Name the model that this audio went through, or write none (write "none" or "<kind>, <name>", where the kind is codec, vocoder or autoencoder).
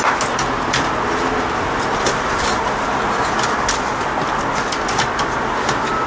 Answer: none